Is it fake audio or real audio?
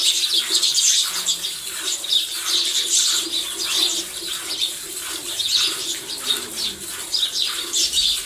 fake